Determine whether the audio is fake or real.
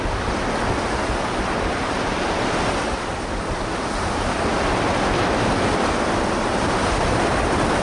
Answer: real